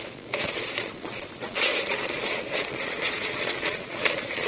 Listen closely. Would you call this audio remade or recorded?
remade